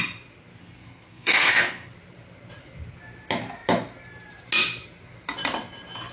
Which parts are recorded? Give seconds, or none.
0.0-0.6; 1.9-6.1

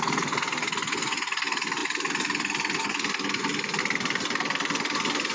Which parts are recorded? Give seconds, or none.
0.0-5.3

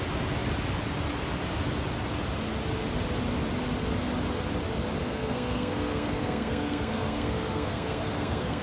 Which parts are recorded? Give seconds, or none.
0.0-5.0

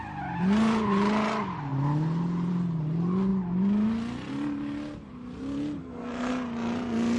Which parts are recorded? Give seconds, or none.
0.0-5.8; 6.3-7.2

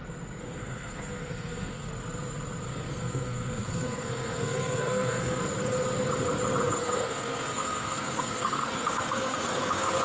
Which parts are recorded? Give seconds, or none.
0.0-0.4; 1.9-2.7; 5.4-6.8

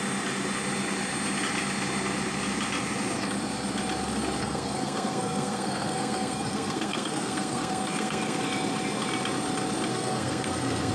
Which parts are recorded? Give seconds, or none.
0.0-4.4; 8.4-9.9

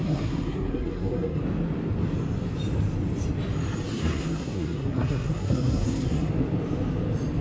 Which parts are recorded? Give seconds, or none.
1.4-3.9; 6.3-7.4

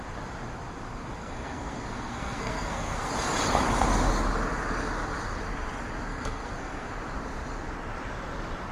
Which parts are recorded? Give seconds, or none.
0.0-1.2; 3.1-6.1; 6.9-8.7